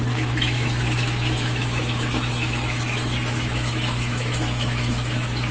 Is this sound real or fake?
fake